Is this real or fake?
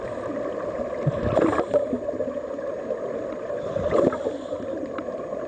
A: real